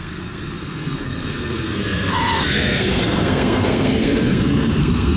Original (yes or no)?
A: no